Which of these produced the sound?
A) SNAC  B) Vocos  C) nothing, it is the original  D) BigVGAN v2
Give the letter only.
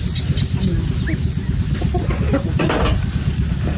C